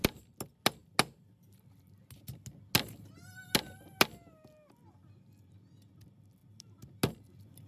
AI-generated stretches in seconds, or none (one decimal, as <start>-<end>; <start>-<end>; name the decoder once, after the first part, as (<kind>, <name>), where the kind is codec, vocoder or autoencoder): none